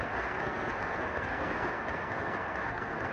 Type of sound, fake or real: fake